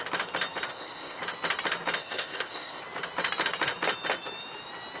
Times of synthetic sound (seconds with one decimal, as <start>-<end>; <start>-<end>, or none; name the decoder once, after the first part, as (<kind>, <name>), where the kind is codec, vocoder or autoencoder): 0.7-1.2 (codec, ZipCodec); 2.0-2.8